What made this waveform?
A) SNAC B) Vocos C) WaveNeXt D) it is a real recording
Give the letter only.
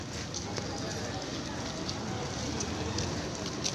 D